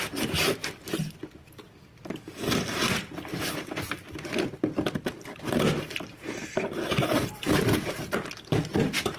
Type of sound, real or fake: fake